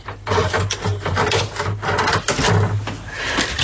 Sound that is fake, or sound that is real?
real